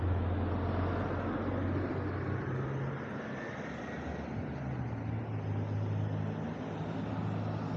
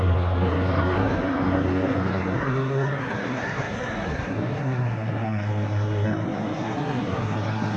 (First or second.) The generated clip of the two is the second